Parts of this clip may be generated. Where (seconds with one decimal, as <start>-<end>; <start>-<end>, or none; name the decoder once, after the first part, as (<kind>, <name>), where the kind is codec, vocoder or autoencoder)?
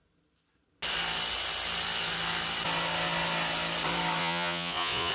4.2-5.1 (vocoder, Vocos)